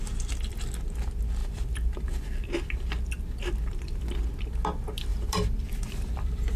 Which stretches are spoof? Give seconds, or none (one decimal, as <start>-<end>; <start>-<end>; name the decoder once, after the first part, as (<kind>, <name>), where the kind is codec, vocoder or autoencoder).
1.4-4.3 (vocoder, BigVGAN v2); 5.1-6.6